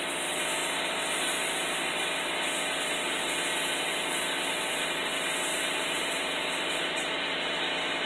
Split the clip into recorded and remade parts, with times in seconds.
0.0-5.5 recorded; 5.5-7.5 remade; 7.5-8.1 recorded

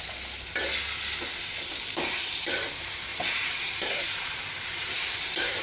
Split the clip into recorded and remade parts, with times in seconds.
0.0-3.1 recorded; 3.1-5.0 remade; 5.0-5.6 recorded

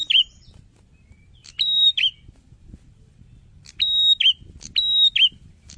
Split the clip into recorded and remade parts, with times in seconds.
0.0-4.0 remade; 4.0-5.3 recorded; 5.3-5.8 remade

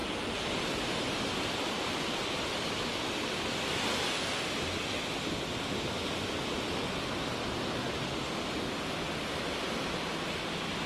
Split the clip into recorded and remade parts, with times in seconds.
0.0-10.9 recorded

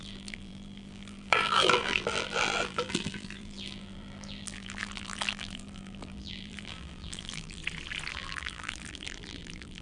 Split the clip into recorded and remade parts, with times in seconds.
0.0-7.6 remade; 7.6-8.1 recorded; 8.1-9.8 remade

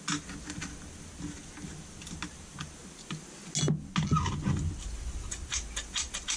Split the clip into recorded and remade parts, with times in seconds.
0.0-6.4 recorded

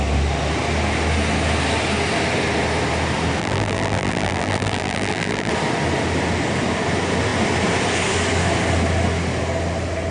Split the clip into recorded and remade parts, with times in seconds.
0.0-3.4 recorded; 3.4-5.5 remade; 5.5-10.1 recorded